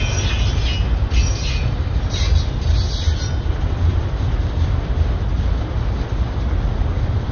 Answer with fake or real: real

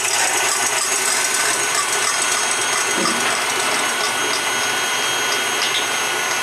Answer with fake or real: real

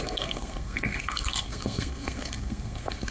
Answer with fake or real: fake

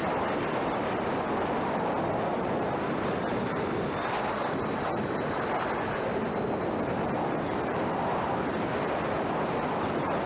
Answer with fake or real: real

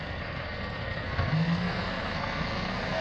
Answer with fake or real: fake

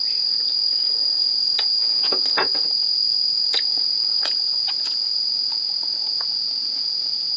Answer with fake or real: fake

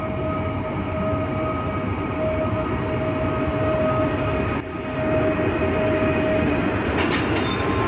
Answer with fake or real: real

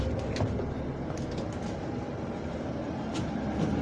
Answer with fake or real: real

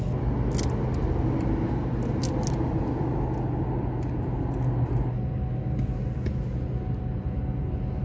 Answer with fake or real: real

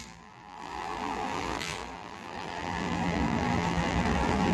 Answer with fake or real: fake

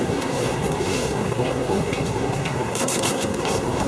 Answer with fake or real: fake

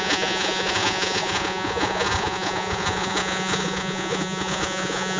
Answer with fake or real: fake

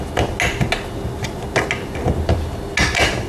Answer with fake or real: real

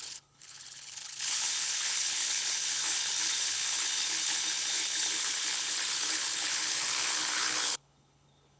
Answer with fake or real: fake